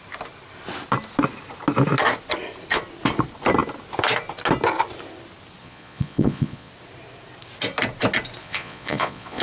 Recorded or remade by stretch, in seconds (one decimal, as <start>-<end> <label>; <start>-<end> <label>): 0.0-5.6 recorded; 5.6-6.7 remade; 6.7-8.4 recorded; 8.4-9.4 remade